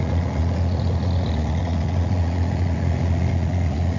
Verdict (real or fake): fake